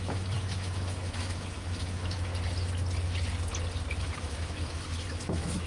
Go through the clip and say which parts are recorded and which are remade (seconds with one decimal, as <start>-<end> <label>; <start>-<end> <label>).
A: 0.0-2.3 remade; 2.3-4.0 recorded; 4.0-5.7 remade